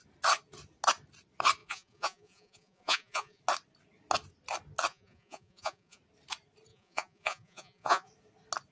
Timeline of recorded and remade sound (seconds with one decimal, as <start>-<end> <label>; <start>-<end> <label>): 0.0-1.6 recorded; 1.6-3.4 remade; 3.4-4.9 recorded; 4.9-6.0 remade; 6.0-6.7 recorded; 6.7-8.1 remade; 8.1-8.7 recorded